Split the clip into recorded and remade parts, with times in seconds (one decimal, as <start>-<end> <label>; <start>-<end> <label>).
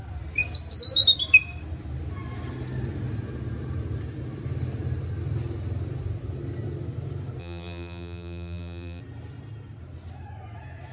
0.0-7.4 recorded; 7.4-9.0 remade; 9.0-10.9 recorded